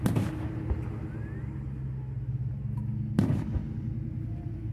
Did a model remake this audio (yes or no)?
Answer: no